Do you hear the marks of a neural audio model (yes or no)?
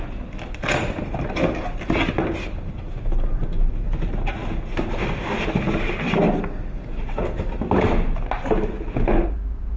no